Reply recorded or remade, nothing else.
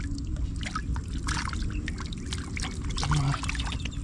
recorded